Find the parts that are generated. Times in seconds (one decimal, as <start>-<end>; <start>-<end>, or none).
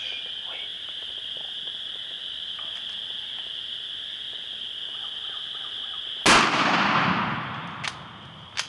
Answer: 0.7-5.8